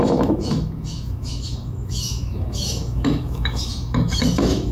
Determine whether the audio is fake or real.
fake